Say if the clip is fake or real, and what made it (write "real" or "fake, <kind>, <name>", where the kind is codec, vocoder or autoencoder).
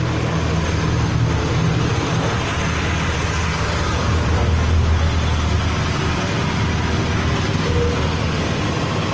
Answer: real